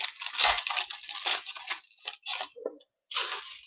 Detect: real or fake real